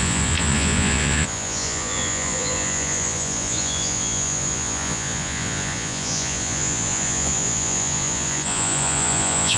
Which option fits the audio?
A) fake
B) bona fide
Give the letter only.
A